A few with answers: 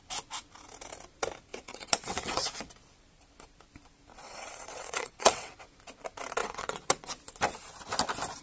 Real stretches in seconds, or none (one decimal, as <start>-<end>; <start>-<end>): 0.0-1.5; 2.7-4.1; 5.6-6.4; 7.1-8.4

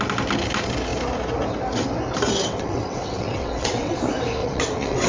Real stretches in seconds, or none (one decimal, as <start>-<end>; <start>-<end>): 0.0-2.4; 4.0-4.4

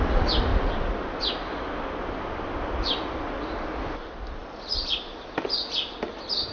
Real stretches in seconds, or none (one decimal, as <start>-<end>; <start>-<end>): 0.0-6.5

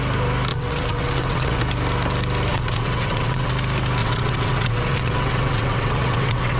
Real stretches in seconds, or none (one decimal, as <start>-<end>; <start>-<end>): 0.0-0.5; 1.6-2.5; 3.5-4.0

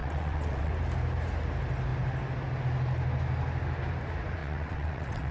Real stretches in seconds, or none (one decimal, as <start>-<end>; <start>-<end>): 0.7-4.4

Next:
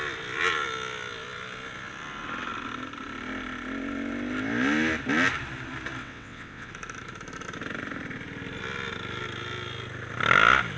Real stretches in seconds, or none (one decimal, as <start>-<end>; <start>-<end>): 0.0-6.0; 6.7-10.8